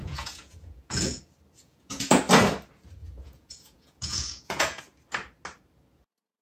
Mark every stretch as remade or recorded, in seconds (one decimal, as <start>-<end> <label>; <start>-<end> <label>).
0.0-1.2 remade; 1.2-1.6 recorded; 1.6-2.2 remade; 2.2-3.0 recorded; 3.0-4.8 remade; 4.8-6.4 recorded